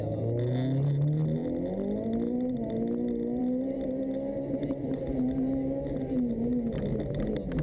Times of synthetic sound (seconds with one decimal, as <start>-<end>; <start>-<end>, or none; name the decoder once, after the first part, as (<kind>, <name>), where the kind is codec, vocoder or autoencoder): none